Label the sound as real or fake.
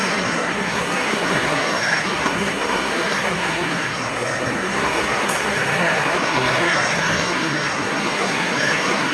fake